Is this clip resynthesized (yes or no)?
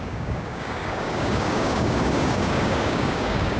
yes